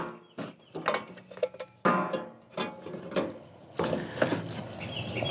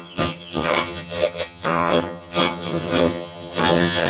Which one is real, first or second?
first